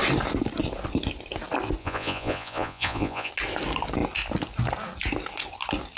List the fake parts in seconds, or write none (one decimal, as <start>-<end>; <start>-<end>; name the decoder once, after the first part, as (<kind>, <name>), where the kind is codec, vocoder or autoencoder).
1.8-3.3 (vocoder, Vocos)